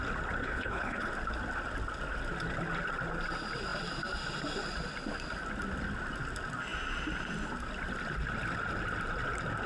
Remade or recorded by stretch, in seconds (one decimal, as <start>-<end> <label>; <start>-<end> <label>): 0.0-0.4 recorded; 0.4-1.1 remade; 1.1-9.7 recorded